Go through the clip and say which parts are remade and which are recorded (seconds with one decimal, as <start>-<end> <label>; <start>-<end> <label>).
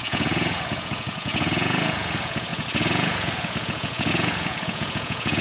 0.0-5.4 remade